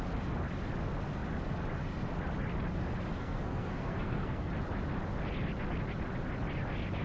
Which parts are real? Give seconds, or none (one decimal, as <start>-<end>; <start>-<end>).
0.0-3.2; 4.5-7.0